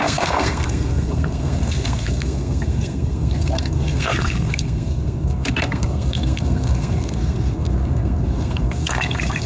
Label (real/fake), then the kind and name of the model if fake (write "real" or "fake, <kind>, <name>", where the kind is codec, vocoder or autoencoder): fake, codec, SNAC